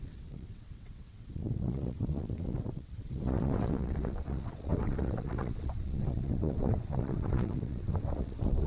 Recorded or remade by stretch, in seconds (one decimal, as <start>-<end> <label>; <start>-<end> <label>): 0.0-8.7 remade